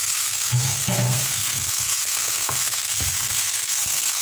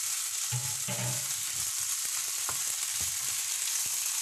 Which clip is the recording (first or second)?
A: second